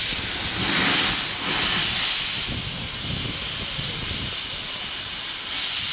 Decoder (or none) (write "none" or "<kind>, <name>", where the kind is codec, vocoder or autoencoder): vocoder, BigVGAN v2